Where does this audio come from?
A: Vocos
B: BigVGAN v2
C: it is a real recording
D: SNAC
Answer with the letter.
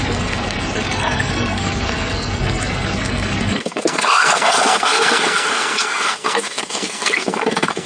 D